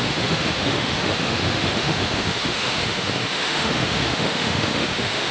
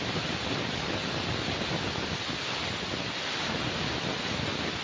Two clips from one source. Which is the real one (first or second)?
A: second